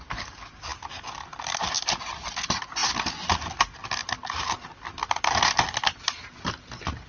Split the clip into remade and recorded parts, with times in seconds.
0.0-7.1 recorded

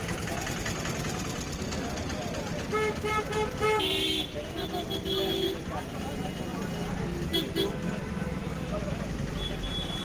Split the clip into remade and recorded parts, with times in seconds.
0.0-10.0 recorded

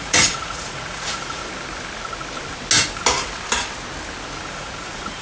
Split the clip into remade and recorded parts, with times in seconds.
0.0-1.4 remade; 1.4-4.5 recorded; 4.5-5.2 remade

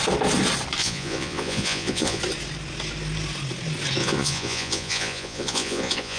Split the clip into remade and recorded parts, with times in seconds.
0.0-0.8 recorded; 0.8-2.2 remade; 2.2-4.0 recorded; 4.0-6.2 remade

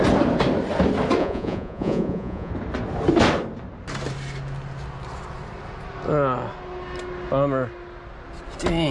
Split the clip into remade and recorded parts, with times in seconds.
0.0-1.2 recorded; 1.2-2.5 remade; 2.5-8.9 recorded

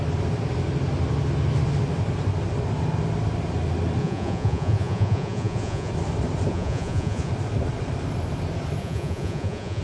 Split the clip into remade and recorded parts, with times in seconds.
0.0-4.0 recorded; 4.0-5.9 remade; 5.9-6.5 recorded; 6.5-7.3 remade; 7.3-8.8 recorded; 8.8-9.8 remade

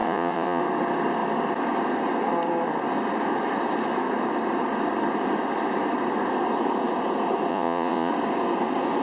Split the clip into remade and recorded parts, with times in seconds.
0.0-0.6 remade; 0.6-7.5 recorded; 7.5-8.1 remade; 8.1-9.0 recorded